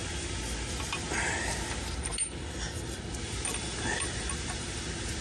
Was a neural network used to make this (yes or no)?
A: no